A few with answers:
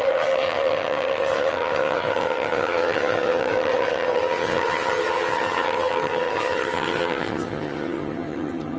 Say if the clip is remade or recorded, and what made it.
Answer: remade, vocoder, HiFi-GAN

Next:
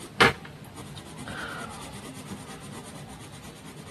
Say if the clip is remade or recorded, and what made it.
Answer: recorded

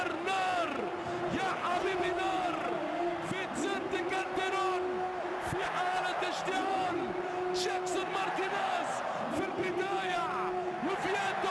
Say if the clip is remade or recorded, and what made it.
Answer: recorded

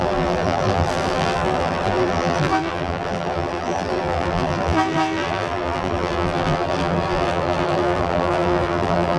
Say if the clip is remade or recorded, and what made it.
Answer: remade, vocoder, BigVGAN v2